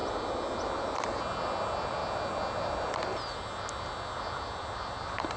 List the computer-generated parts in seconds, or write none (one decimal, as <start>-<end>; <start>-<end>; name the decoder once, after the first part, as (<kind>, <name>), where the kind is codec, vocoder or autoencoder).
none